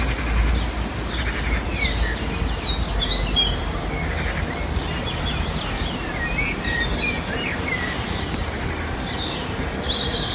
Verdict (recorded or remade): recorded